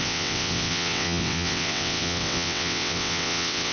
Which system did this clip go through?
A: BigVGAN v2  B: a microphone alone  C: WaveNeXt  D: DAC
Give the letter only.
C